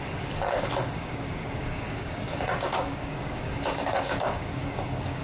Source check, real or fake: fake